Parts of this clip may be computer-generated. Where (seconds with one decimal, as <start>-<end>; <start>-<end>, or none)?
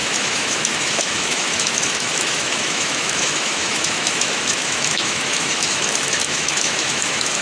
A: 0.0-7.4